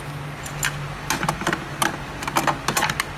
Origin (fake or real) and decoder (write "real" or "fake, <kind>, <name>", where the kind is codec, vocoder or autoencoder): real